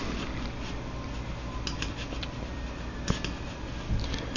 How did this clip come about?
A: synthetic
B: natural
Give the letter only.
B